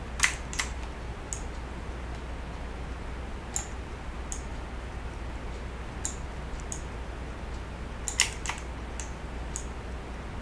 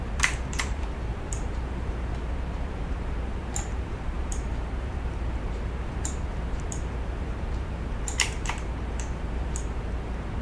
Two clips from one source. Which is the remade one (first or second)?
second